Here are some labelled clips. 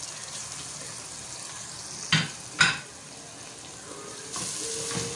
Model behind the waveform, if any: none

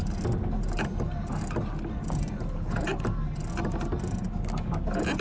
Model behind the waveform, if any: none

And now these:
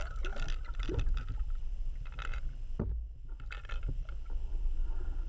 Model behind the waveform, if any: none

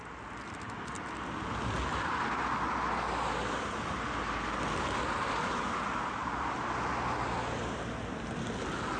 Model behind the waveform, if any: none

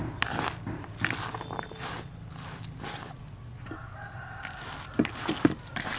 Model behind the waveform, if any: none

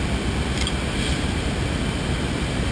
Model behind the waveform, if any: none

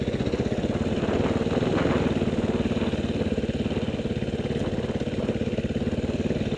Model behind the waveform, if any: none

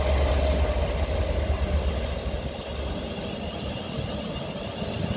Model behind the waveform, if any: none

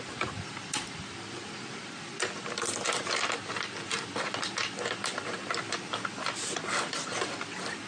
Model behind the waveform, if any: none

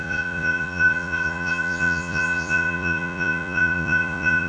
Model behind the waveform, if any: vocoder, Vocos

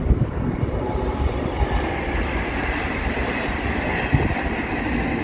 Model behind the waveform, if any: none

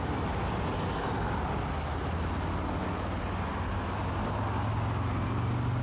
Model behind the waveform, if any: none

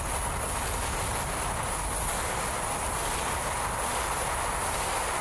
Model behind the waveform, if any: none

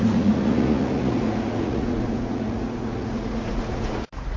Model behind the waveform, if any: vocoder, Vocos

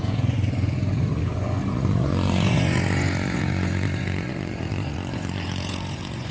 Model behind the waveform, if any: vocoder, Vocos